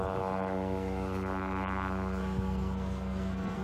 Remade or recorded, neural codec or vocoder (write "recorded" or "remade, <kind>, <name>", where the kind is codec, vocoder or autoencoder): remade, codec, SNAC